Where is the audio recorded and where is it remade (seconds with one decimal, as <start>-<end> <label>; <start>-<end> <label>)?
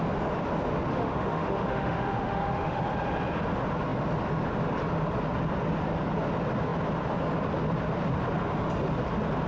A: 0.0-0.9 recorded; 0.9-2.8 remade; 2.8-9.5 recorded